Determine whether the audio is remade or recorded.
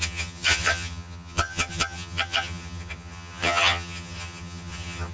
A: remade